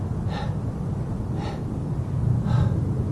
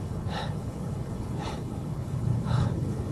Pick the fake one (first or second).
second